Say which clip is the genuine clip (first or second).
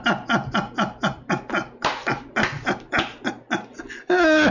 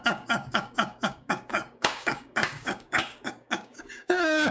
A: first